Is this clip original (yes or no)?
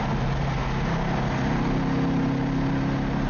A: yes